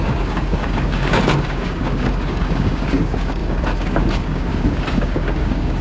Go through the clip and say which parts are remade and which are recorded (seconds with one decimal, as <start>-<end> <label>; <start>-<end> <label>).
0.0-5.8 remade

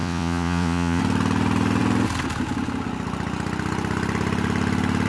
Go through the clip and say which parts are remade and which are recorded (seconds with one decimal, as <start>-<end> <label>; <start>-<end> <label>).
0.0-1.0 remade; 1.0-5.1 recorded

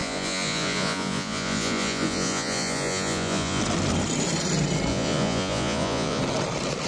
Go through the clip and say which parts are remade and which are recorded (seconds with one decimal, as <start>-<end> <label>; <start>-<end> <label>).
0.0-3.6 remade; 3.6-4.9 recorded; 4.9-6.2 remade; 6.2-6.9 recorded

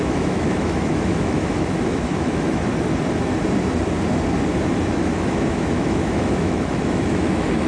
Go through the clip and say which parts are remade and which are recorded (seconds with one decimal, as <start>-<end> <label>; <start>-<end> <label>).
0.0-2.7 remade; 2.7-4.9 recorded; 4.9-7.7 remade

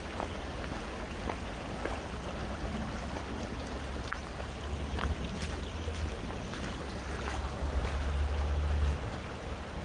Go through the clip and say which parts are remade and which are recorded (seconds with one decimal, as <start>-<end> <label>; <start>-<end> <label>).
0.0-9.8 recorded